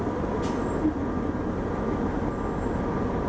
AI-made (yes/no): no